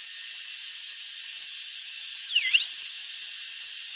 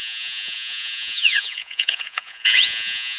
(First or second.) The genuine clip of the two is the first